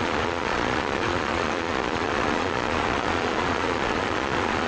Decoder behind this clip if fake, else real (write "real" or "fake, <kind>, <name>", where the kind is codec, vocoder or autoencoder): fake, vocoder, Vocos